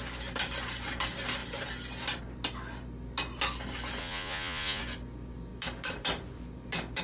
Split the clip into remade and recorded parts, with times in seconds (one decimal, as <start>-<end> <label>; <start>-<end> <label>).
0.0-4.0 recorded; 4.0-4.8 remade; 4.8-7.0 recorded